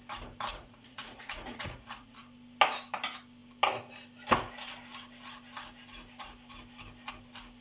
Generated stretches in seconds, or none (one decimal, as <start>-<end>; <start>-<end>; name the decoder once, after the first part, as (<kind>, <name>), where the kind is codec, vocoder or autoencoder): 0.5-2.2 (vocoder, Vocos)